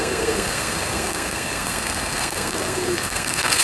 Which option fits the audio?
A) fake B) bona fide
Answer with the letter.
A